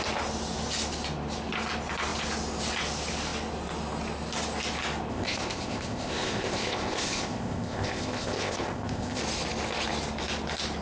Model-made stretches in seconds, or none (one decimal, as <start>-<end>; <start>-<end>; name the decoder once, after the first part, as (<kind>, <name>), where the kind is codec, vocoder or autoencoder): 5.1-9.2 (codec, ZipCodec)